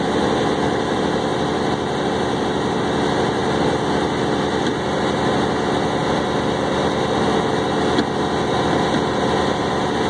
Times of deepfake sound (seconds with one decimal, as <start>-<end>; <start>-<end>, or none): none